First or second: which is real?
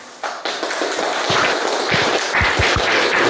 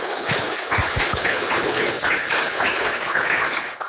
first